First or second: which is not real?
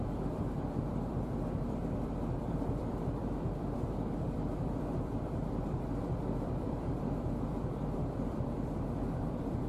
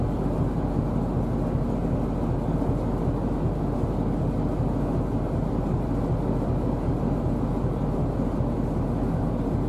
first